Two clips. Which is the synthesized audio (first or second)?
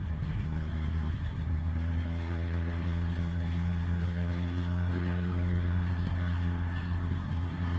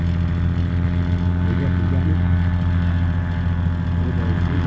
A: first